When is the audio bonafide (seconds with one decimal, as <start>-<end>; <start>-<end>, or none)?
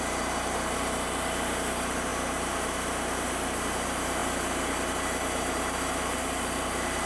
none